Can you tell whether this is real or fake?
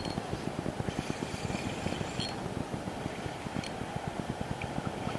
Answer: real